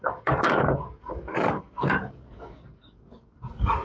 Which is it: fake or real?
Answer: fake